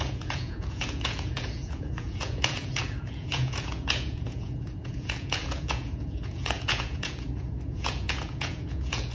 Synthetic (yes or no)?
yes